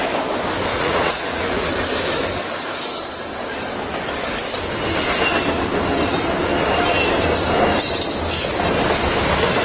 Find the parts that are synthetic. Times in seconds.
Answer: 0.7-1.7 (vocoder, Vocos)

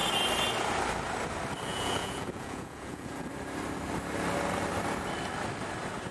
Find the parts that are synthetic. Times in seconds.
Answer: 1.7-3.3 (vocoder, Vocos)

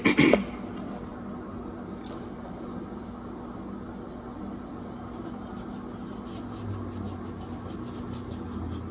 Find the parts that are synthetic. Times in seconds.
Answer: none

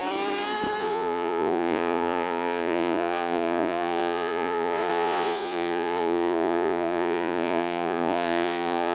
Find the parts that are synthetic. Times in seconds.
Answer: 0.8-8.9 (vocoder, Vocos)